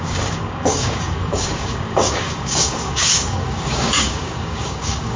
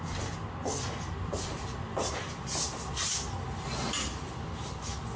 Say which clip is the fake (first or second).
first